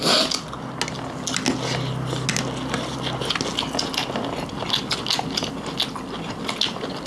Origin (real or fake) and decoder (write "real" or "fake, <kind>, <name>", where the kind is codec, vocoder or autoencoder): real